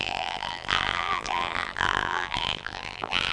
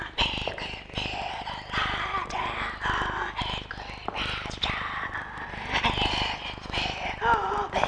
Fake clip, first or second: first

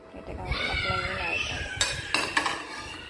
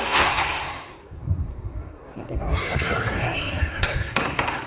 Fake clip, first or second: second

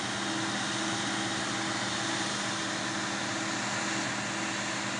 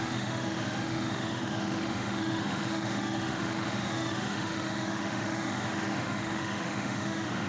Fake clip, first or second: second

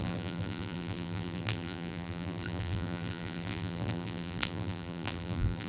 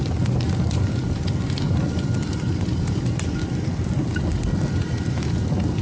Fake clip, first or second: first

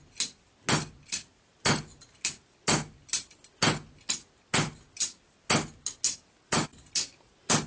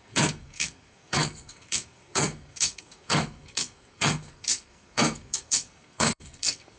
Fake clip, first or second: second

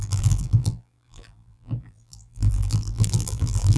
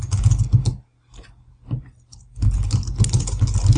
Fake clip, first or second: first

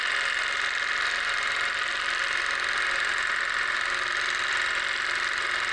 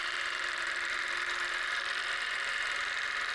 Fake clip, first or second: second